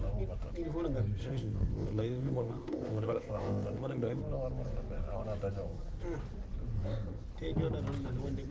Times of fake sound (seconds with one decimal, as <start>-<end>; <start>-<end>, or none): 1.2-4.2